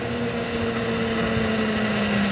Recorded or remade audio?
recorded